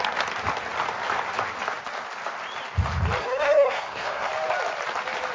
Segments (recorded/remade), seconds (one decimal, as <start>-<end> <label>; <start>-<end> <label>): 0.0-3.2 recorded; 3.2-4.3 remade; 4.3-5.3 recorded